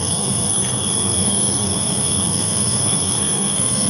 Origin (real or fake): fake